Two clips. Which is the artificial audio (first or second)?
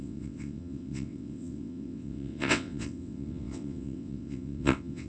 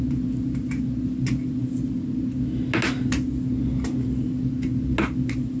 first